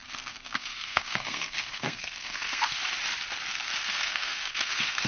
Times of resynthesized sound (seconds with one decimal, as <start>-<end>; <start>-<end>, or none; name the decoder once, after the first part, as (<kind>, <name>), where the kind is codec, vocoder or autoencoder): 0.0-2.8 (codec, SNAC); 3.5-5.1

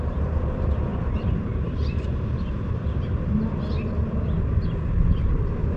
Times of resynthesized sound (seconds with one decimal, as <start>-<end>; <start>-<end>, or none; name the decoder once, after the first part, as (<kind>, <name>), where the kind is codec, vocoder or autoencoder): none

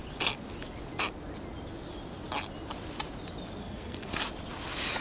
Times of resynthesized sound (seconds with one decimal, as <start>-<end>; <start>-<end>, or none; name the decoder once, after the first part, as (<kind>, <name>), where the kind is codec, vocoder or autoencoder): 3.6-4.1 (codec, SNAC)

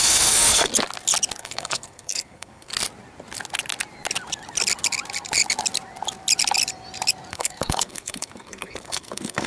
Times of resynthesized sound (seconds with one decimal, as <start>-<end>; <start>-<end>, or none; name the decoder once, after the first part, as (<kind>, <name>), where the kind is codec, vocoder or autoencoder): 0.0-0.7 (codec, SNAC); 1.4-2.7; 7.3-9.5

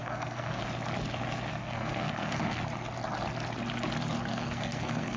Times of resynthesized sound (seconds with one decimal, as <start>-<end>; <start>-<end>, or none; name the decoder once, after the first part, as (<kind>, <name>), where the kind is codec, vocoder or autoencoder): 0.0-0.6 (codec, SNAC); 1.5-2.6; 4.3-5.2

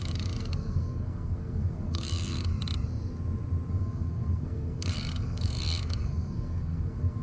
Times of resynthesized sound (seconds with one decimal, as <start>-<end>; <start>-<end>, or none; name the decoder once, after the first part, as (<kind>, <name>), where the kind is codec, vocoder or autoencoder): 0.0-2.5 (codec, SNAC); 3.7-7.2